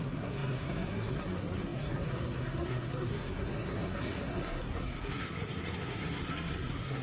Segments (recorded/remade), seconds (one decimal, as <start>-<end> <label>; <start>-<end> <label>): 0.0-7.0 remade